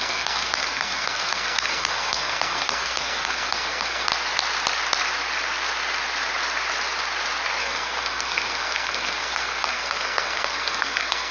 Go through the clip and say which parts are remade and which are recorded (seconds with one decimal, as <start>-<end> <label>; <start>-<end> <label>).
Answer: 0.0-4.1 remade; 4.1-7.6 recorded; 7.6-11.3 remade